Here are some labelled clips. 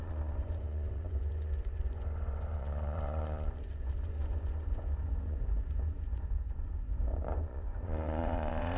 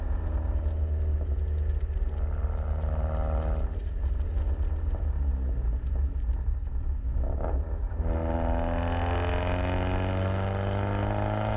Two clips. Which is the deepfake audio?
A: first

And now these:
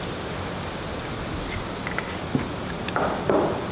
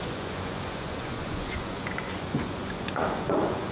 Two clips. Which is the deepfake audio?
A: second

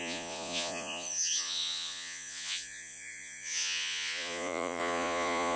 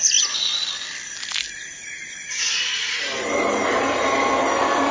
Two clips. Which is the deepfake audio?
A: first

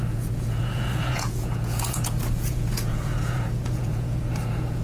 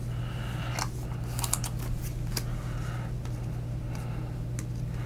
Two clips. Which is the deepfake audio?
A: first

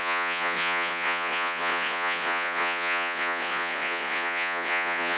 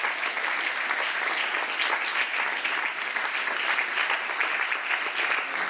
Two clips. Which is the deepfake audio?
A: first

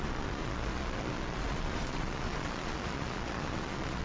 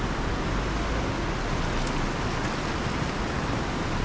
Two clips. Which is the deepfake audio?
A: first